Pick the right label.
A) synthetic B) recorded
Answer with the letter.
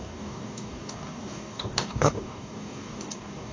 A